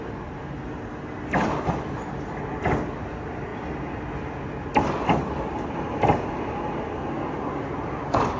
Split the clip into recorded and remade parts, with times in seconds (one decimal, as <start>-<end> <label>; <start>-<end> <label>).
0.0-8.4 recorded